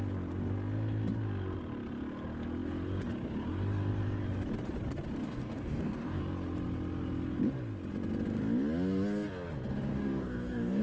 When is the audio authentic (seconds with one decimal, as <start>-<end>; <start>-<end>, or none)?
0.0-5.2; 6.2-9.9